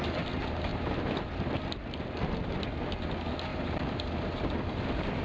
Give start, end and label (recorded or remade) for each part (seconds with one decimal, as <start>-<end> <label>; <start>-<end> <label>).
0.0-3.5 recorded; 3.5-4.4 remade; 4.4-5.2 recorded